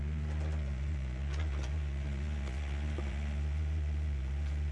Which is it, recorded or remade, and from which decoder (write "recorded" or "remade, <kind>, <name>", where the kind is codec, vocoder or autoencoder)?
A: remade, vocoder, Vocos